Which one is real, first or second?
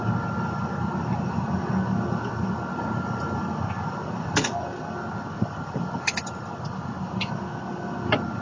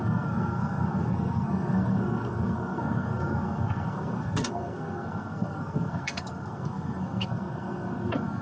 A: first